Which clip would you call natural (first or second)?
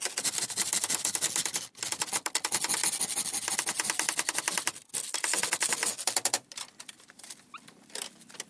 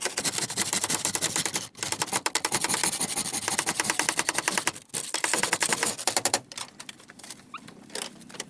first